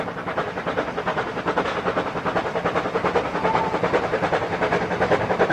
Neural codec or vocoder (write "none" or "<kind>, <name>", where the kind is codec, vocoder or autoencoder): none